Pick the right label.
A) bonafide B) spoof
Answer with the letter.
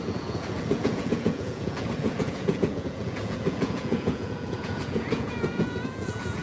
B